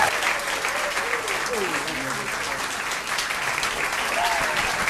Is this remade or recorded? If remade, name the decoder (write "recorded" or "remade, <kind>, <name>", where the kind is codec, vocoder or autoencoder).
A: recorded